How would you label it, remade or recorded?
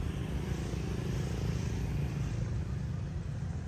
recorded